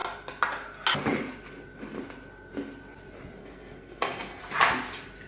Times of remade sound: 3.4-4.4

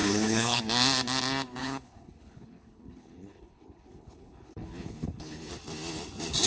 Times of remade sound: 0.0-0.6; 1.6-5.5

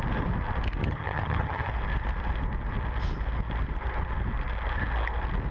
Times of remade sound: 0.8-1.7